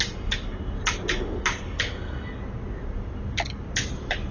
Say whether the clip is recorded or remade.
recorded